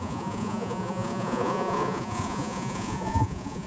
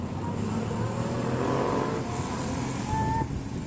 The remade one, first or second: first